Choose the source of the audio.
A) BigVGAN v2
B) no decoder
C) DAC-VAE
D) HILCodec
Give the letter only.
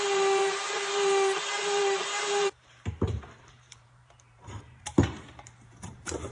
A